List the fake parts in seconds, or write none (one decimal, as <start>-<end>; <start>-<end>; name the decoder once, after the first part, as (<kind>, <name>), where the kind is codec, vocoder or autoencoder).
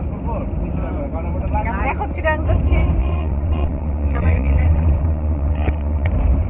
3.0-6.1 (vocoder, WaveNeXt)